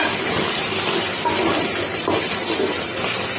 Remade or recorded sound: recorded